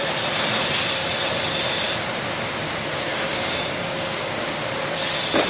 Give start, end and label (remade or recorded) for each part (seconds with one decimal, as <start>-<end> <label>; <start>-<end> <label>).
0.0-3.1 recorded; 3.1-4.3 remade; 4.3-5.5 recorded